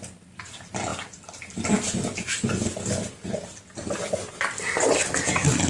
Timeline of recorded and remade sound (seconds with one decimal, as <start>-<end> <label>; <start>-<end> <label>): 0.0-5.7 recorded